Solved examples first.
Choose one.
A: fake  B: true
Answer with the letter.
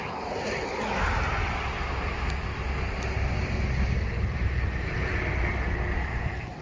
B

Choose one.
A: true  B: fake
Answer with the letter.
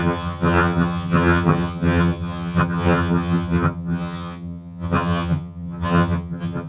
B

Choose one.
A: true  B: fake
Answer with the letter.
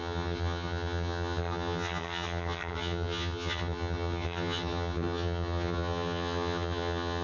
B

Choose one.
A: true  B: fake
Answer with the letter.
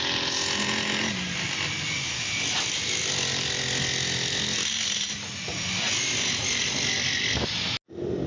A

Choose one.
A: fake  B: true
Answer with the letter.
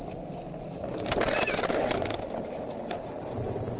B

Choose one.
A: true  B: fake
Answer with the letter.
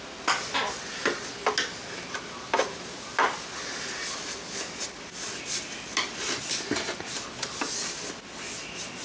A